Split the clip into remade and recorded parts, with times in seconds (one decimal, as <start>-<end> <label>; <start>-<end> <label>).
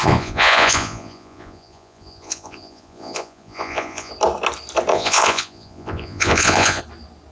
0.0-4.1 remade; 4.1-4.9 recorded; 4.9-6.8 remade; 6.8-7.3 recorded